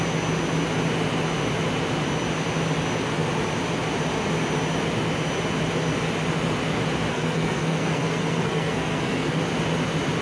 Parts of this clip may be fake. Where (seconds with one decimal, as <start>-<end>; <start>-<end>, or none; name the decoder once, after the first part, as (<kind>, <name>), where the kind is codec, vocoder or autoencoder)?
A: 7.1-9.4 (codec, SNAC)